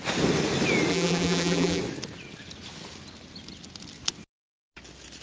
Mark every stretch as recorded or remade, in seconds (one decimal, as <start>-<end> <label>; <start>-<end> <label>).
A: 0.0-0.9 recorded; 0.9-1.8 remade; 1.8-5.2 recorded